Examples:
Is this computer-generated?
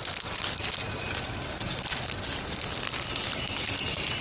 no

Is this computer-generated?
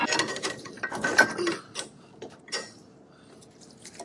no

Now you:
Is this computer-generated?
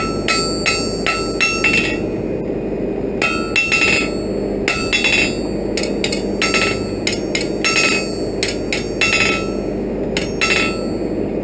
no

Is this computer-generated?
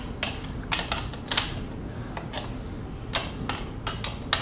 no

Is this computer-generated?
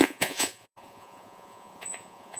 yes